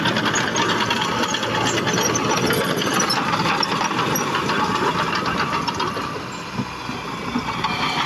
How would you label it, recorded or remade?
recorded